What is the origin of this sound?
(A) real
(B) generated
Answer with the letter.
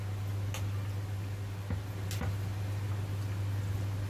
A